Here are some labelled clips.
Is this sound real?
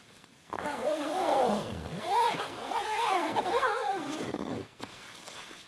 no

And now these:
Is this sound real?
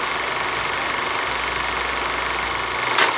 yes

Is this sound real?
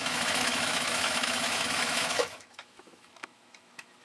no